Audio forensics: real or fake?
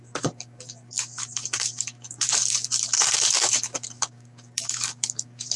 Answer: fake